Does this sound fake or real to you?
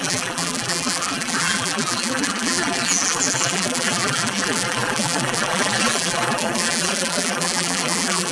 fake